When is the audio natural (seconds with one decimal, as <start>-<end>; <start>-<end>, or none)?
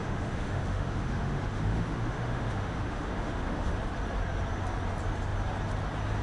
3.7-6.2